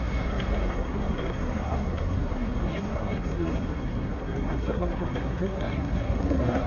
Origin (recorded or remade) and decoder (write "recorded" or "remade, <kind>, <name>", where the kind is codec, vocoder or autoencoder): remade, codec, SNAC